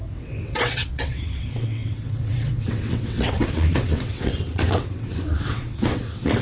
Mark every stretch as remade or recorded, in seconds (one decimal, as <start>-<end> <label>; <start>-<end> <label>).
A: 0.0-6.4 remade